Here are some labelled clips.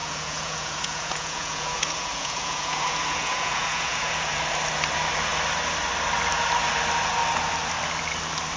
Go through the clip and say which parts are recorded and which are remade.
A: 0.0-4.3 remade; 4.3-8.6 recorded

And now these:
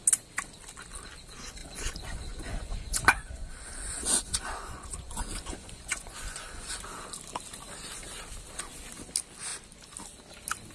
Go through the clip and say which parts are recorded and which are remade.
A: 0.0-1.6 recorded; 1.6-6.8 remade; 6.8-10.7 recorded

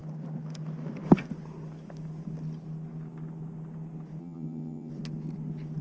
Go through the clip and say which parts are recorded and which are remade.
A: 0.0-4.2 recorded; 4.2-4.9 remade; 4.9-5.8 recorded

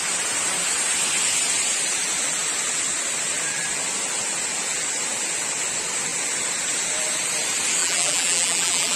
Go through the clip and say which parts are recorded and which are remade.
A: 0.0-7.8 recorded; 7.8-9.0 remade

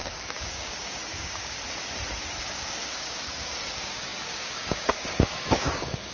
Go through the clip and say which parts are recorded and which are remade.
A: 0.0-1.6 remade; 1.6-2.4 recorded; 2.4-6.1 remade

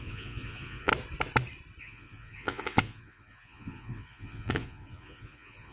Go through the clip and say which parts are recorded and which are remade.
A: 0.0-0.9 remade; 0.9-1.8 recorded; 1.8-5.7 remade

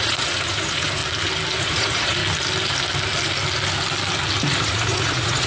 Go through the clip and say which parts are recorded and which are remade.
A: 0.0-1.0 remade; 1.0-1.6 recorded; 1.6-2.2 remade; 2.2-4.4 recorded; 4.4-5.5 remade

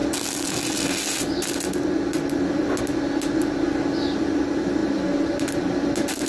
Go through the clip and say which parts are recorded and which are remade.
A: 0.0-6.3 recorded